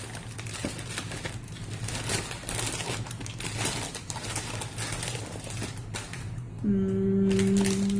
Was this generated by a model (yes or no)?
no